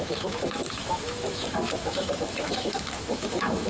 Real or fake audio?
fake